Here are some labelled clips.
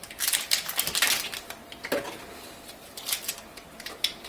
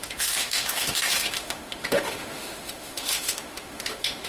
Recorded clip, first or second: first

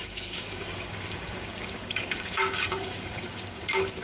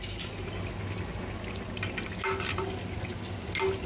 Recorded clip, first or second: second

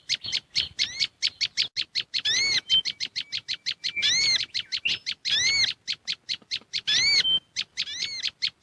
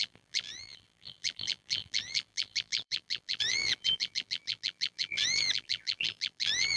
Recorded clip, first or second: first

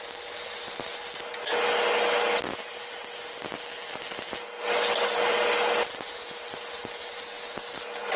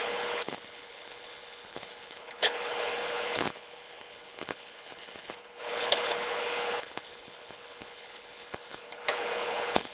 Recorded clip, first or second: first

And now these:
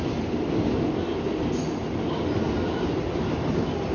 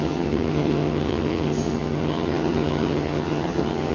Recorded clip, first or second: first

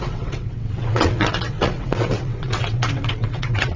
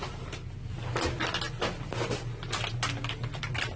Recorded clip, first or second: second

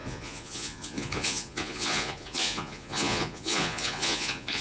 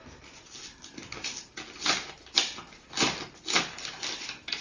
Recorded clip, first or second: second